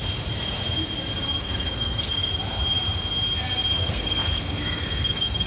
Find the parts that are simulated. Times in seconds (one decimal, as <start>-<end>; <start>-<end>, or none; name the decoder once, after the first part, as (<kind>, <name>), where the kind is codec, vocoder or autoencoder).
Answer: 1.4-2.3 (codec, SNAC); 3.7-5.5